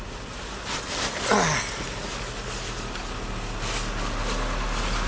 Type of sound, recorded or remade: recorded